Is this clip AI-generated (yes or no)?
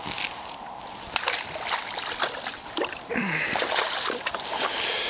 no